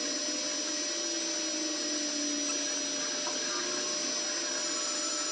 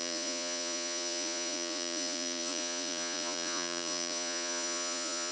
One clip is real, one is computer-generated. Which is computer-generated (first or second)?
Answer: second